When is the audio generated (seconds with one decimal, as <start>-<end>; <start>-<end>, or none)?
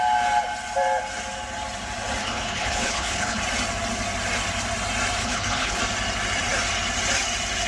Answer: 2.2-3.4; 5.2-5.8